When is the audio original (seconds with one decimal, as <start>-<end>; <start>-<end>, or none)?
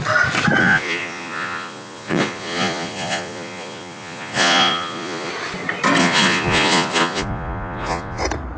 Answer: 0.0-0.6; 5.3-6.0; 8.2-8.6